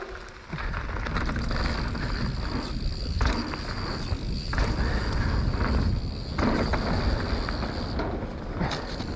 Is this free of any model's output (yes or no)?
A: yes